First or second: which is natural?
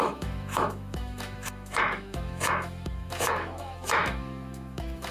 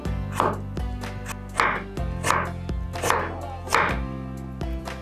second